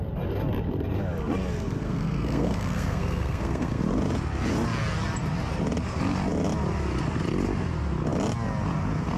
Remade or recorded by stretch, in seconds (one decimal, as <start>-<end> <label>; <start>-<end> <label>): 0.0-1.8 recorded; 1.8-3.8 remade; 3.8-9.2 recorded